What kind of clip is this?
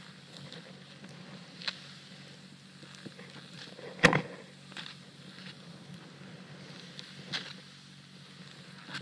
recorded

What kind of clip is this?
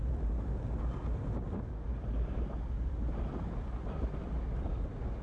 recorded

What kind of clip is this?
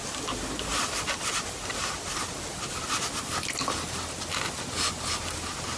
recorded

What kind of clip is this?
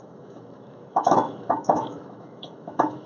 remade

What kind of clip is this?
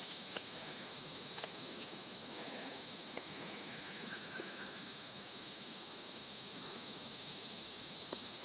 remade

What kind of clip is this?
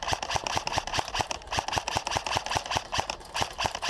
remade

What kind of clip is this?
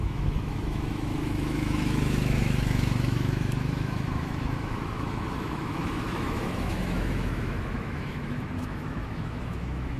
remade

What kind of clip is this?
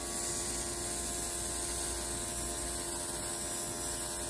recorded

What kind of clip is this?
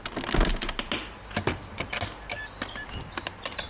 recorded